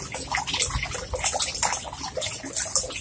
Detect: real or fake real